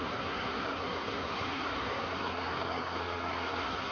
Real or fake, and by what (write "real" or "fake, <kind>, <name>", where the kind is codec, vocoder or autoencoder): fake, codec, SNAC